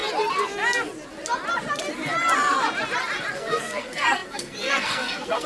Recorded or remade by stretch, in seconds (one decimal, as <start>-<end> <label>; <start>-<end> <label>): 0.0-3.3 recorded; 3.3-5.5 remade